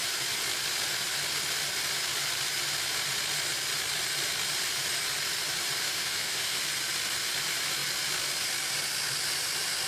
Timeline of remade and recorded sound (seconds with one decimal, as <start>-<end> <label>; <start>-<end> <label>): 0.0-5.8 recorded; 5.8-6.6 remade; 6.6-9.9 recorded